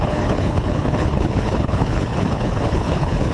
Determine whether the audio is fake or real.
fake